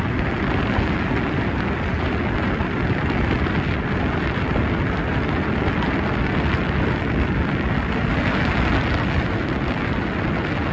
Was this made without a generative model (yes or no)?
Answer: yes